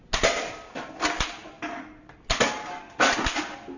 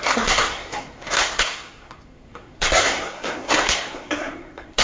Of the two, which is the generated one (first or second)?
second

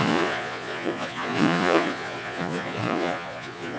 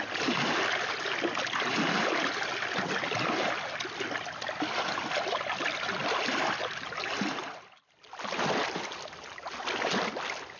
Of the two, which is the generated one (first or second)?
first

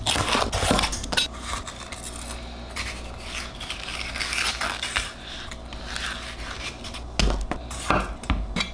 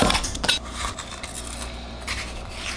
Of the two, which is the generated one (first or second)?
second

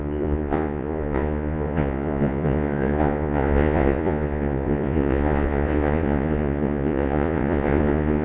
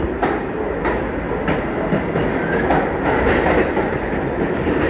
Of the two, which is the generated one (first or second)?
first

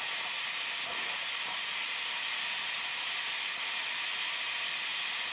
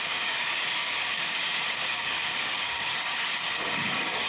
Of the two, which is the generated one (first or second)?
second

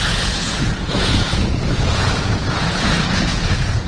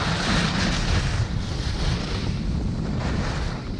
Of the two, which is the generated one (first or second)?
first